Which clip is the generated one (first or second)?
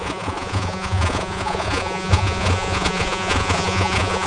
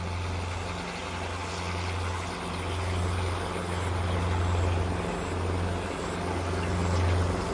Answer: first